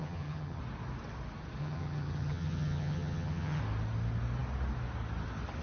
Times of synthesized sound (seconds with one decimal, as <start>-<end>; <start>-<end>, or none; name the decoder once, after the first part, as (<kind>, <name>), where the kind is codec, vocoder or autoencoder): 0.0-0.6 (vocoder, HiFi-GAN); 1.6-3.6